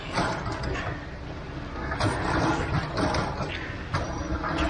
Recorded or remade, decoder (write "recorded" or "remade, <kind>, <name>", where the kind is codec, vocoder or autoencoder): recorded